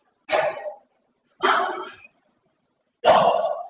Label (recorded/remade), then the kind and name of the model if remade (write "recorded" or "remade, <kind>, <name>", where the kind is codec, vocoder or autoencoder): recorded